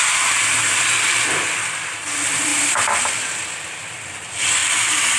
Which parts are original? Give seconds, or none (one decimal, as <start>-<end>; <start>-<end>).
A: 2.5-3.6